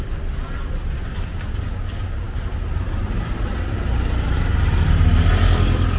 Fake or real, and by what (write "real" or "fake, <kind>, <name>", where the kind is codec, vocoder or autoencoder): real